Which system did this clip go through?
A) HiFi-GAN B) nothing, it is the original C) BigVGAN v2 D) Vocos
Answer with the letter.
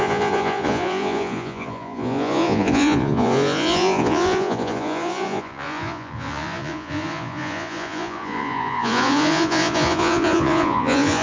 D